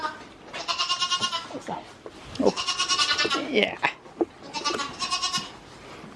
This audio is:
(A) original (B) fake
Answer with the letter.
A